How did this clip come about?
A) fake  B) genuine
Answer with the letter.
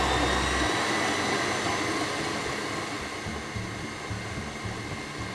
B